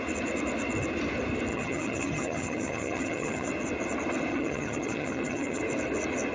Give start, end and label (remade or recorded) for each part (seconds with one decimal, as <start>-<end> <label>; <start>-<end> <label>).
0.0-1.5 recorded; 1.5-3.5 remade; 3.5-4.3 recorded; 4.3-5.6 remade; 5.6-6.3 recorded